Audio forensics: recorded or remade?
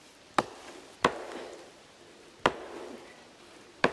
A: recorded